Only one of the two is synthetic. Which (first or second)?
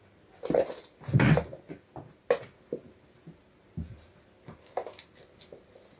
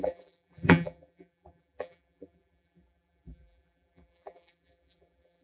second